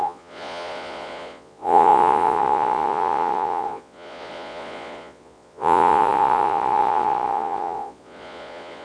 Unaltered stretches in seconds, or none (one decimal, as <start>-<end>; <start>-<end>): none